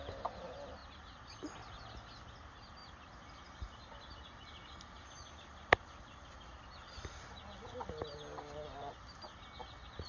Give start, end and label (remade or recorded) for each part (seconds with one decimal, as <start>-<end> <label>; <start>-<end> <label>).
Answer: 0.0-10.1 recorded